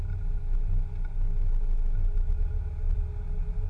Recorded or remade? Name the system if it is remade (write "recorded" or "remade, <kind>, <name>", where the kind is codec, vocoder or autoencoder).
recorded